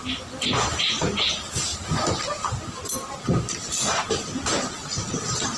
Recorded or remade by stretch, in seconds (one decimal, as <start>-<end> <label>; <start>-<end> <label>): 0.0-1.7 recorded; 1.7-5.1 remade; 5.1-5.6 recorded